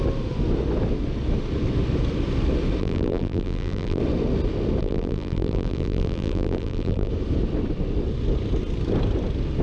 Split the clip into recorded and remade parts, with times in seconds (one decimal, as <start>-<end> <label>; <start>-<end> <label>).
0.0-2.8 recorded; 2.8-4.0 remade; 4.0-4.8 recorded; 4.8-7.1 remade; 7.1-9.6 recorded